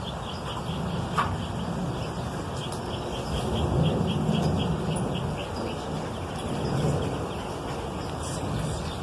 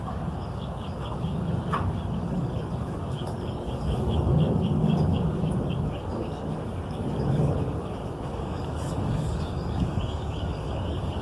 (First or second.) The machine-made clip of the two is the second